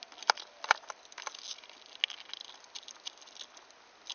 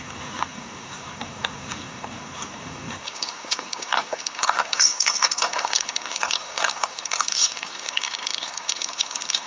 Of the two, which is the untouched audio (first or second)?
first